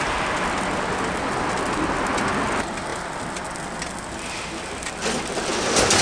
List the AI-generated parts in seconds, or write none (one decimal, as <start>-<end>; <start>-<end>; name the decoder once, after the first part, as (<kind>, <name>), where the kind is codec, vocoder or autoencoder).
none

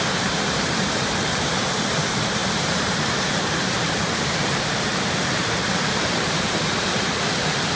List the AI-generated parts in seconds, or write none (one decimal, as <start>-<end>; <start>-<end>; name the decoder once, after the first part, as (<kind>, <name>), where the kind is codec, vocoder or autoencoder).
0.0-7.8 (vocoder, BigVGAN v2)

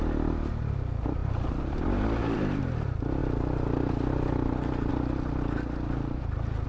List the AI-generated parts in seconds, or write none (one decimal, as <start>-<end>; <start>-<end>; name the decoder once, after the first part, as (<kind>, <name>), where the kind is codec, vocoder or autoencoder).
1.2-2.6 (vocoder, BigVGAN v2)

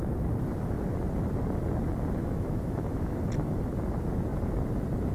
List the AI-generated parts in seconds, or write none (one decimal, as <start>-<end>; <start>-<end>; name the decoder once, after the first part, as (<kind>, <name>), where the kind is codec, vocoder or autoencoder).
2.2-3.2 (autoencoder, DAC-VAE)

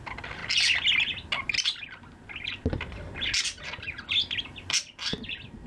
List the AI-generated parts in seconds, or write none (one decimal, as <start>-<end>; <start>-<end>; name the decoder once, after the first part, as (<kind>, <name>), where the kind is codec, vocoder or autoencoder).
0.0-0.4 (vocoder, BigVGAN v2); 3.8-5.1

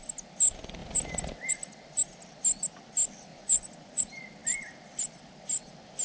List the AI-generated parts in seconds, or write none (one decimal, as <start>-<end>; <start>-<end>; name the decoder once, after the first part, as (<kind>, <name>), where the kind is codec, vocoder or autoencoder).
3.3-4.0 (vocoder, Vocos)

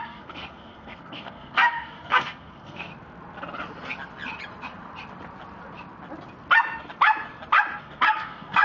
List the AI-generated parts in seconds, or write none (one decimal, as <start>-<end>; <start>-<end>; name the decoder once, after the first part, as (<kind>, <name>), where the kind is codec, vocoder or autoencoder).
0.0-2.9 (codec, SNAC); 7.8-8.6